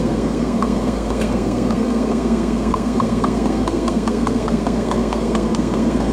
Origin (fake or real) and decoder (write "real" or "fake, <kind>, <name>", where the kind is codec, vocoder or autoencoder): fake, codec, SNAC